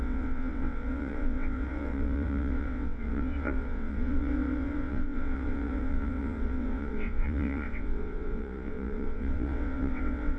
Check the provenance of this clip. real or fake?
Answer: fake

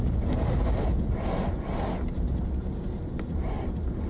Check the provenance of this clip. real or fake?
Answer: real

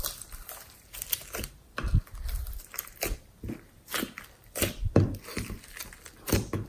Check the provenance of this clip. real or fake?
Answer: fake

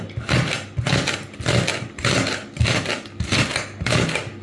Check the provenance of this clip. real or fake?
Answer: real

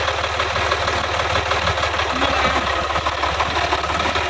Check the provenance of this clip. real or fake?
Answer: real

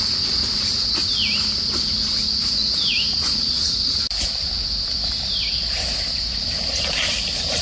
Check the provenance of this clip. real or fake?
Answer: real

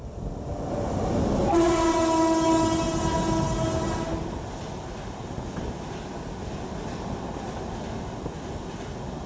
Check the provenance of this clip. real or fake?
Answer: real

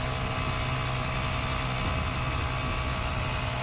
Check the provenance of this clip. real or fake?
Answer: real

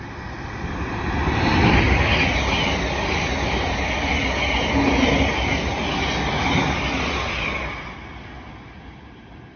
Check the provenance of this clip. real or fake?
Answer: real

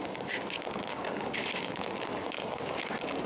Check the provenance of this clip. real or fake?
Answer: fake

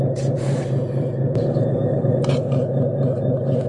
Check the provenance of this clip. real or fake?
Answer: fake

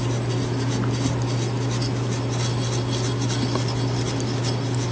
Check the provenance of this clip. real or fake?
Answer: real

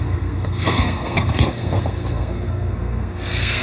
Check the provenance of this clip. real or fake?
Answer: fake